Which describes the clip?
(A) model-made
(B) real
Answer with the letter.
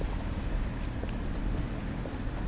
B